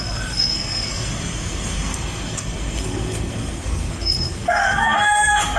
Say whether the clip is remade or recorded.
remade